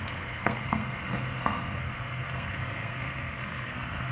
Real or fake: fake